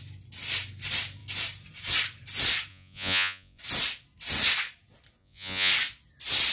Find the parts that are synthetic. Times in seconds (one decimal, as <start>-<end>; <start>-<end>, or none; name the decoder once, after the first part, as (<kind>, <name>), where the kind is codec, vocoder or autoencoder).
2.7-3.6 (vocoder, Vocos); 5.2-5.7

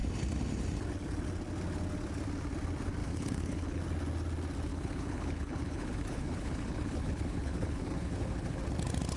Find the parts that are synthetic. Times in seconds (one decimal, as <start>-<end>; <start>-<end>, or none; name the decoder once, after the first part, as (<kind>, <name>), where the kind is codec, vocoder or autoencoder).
3.0-3.8 (codec, HILCodec); 4.7-8.6

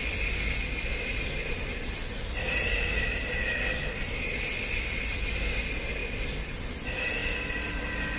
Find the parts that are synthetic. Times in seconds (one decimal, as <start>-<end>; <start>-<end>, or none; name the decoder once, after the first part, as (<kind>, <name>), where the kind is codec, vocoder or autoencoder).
none

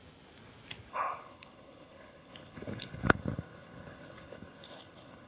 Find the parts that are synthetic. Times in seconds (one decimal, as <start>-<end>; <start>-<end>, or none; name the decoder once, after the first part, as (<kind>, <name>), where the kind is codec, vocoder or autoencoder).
0.9-5.3 (codec, HILCodec)

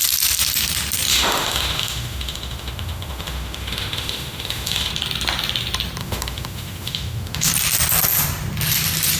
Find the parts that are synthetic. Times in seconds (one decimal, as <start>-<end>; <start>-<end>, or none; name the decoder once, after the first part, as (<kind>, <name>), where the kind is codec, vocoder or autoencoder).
1.1-4.9 (autoencoder, DAC-VAE); 6.0-7.5

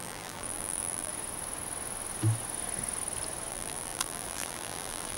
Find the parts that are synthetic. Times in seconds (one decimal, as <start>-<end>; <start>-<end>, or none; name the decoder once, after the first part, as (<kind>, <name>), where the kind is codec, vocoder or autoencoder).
0.0-1.1 (vocoder, BigVGAN v2); 3.5-5.2

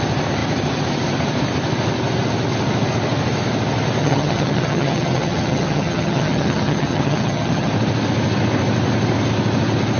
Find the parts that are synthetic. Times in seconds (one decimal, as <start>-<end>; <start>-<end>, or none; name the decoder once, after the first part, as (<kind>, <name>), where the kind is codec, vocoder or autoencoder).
4.0-7.7 (vocoder, HiFi-GAN)